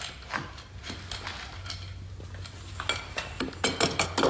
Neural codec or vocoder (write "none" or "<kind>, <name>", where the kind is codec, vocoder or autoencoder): none